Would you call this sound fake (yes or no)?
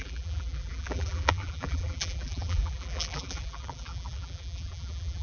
yes